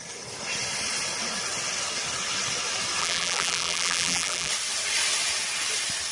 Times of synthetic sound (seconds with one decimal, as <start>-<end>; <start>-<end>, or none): 3.0-4.5